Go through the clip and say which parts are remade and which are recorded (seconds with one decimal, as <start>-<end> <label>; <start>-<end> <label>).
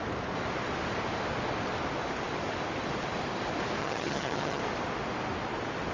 0.0-3.8 recorded; 3.8-4.6 remade; 4.6-5.9 recorded